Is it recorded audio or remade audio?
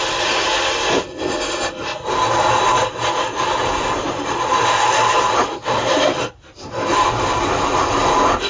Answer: recorded